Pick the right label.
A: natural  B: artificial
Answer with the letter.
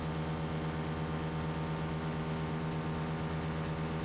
A